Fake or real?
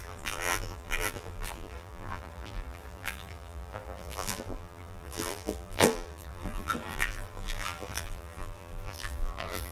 fake